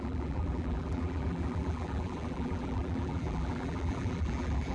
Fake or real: fake